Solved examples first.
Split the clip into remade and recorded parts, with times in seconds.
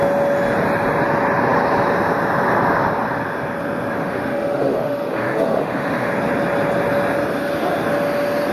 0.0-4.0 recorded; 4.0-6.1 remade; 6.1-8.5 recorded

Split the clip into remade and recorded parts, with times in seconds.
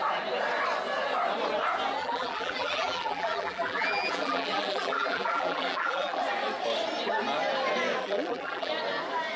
0.0-2.0 recorded; 2.0-6.2 remade; 6.2-8.0 recorded; 8.0-8.7 remade; 8.7-9.4 recorded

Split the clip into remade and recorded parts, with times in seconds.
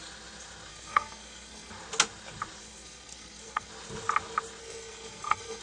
0.0-0.7 recorded; 0.7-1.7 remade; 1.7-2.6 recorded; 2.6-3.7 remade; 3.7-4.6 recorded; 4.6-5.6 remade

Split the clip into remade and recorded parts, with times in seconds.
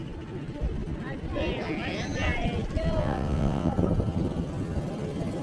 0.0-3.0 recorded; 3.0-3.7 remade; 3.7-5.4 recorded